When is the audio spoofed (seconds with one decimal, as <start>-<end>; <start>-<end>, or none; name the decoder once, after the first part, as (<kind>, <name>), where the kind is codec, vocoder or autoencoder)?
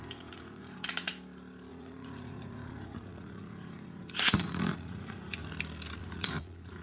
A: 0.0-1.1 (vocoder, Vocos); 1.7-5.4; 6.0-6.8